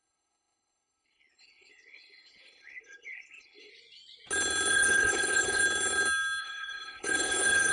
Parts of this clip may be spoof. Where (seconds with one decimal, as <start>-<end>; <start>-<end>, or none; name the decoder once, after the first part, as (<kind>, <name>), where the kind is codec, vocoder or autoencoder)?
0.0-3.7 (codec, HILCodec); 4.7-5.6; 6.4-7.7